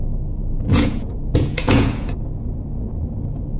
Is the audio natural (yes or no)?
no